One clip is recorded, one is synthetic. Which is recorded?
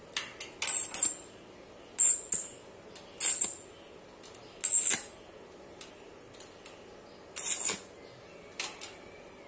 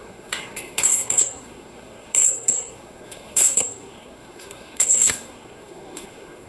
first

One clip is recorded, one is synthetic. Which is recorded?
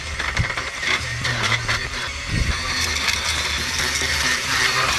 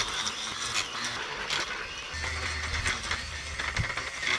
second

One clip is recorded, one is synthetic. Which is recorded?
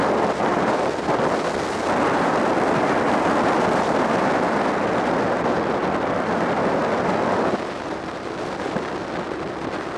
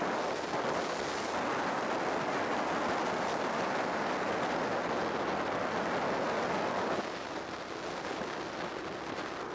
second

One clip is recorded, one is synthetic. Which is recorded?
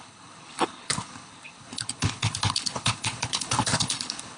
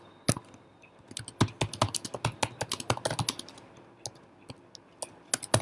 second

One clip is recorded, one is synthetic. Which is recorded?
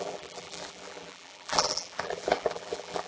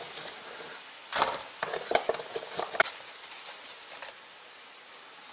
second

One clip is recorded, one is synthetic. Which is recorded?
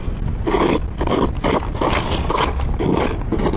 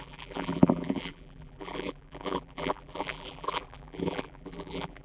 first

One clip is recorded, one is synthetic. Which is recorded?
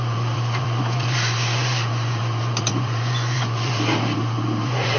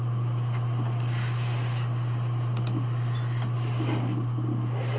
second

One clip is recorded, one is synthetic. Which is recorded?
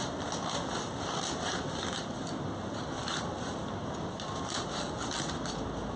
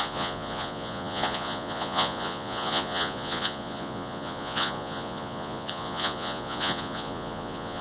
first